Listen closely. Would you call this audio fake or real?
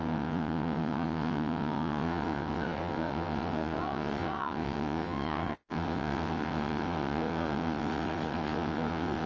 fake